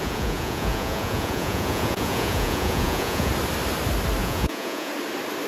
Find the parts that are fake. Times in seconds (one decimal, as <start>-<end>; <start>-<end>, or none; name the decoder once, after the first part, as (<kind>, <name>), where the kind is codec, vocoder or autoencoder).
0.0-3.3 (vocoder, Vocos); 4.2-4.9

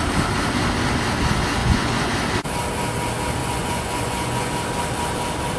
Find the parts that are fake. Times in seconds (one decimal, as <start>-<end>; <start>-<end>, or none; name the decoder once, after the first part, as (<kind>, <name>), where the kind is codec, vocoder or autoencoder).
1.6-2.1 (vocoder, Vocos); 3.4-4.5

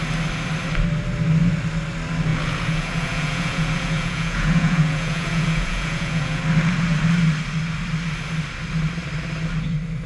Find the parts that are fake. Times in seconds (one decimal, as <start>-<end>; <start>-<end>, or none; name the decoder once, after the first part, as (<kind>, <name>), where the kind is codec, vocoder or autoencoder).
2.3-6.4 (vocoder, Vocos)

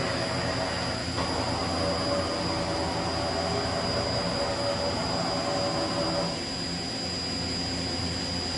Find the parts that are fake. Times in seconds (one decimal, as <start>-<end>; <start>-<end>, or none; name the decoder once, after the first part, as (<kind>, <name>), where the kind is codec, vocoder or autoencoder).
none

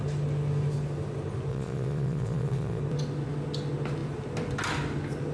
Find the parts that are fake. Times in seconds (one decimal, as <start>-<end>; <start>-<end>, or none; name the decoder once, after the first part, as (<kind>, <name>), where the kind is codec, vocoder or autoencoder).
1.5-2.8 (vocoder, Vocos)

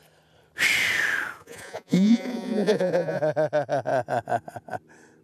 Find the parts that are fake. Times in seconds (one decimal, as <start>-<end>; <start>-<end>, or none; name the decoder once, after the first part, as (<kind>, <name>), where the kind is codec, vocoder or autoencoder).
1.4-3.2 (vocoder, Vocos)